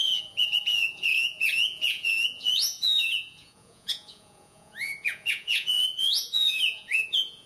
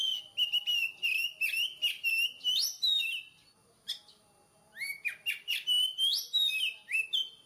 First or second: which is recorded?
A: second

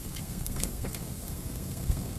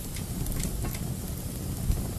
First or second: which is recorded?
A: second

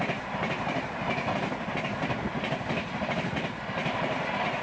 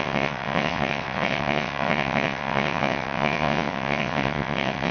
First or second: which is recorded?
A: first